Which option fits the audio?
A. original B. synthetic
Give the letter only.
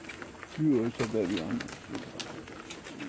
A